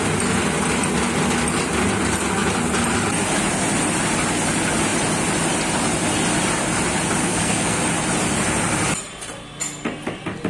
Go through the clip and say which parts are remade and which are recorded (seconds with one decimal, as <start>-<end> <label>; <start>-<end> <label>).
0.0-7.2 recorded; 7.2-7.8 remade; 7.8-10.5 recorded